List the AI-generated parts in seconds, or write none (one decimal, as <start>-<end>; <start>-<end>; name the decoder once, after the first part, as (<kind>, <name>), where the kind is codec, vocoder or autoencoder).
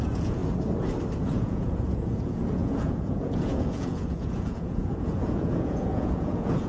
0.0-0.4 (vocoder, Vocos); 1.2-6.7